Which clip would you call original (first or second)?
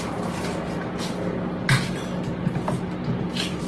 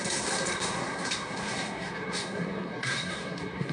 first